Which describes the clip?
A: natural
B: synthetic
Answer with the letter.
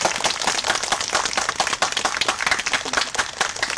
A